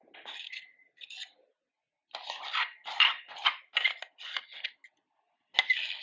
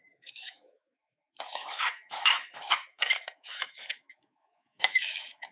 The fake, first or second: second